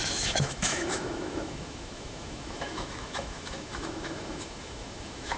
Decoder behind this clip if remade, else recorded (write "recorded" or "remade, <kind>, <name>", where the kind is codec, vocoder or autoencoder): remade, autoencoder, DAC-VAE